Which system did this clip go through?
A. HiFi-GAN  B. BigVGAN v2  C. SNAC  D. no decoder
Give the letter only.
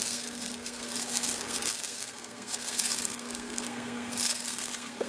C